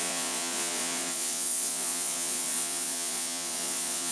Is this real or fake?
fake